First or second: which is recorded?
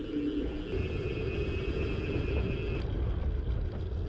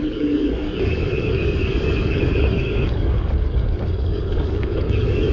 first